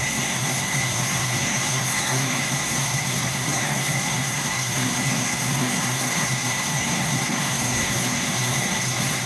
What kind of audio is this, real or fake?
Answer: fake